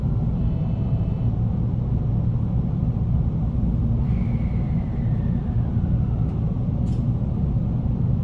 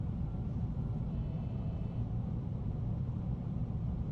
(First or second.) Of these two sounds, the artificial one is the second